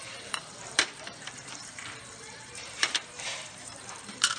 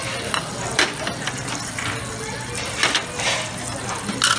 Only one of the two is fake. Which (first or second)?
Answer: first